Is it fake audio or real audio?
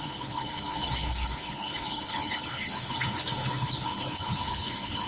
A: fake